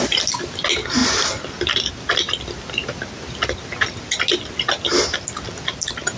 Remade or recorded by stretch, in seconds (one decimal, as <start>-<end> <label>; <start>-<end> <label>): 0.0-6.2 recorded